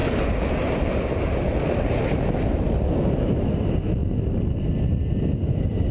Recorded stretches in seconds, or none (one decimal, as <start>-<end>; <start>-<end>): 0.0-3.1; 4.0-5.1